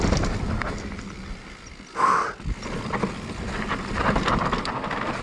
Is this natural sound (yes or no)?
yes